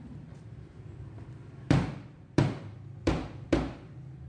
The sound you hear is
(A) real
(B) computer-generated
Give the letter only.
B